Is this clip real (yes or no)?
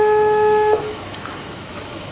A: no